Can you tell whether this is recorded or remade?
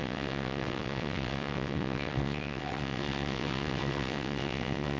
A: remade